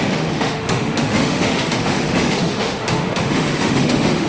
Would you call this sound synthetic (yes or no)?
yes